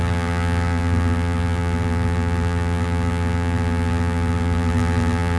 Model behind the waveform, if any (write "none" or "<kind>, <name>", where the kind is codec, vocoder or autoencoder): vocoder, BigVGAN v2